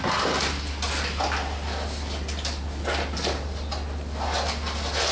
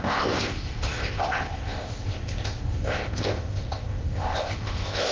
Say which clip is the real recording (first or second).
first